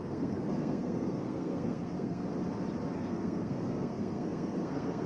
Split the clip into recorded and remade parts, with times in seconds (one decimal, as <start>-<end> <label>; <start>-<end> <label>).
0.0-2.2 remade; 2.2-2.9 recorded; 2.9-5.1 remade